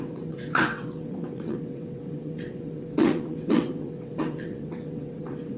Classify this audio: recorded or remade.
remade